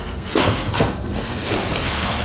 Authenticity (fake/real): fake